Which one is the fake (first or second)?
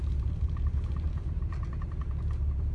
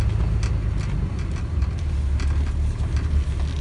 first